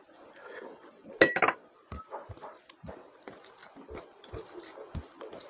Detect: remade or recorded recorded